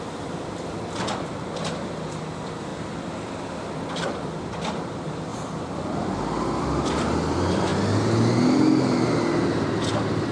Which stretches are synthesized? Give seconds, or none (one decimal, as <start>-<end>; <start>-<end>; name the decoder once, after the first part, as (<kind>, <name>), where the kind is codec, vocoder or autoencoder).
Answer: 0.0-5.3 (vocoder, BigVGAN v2); 6.5-7.7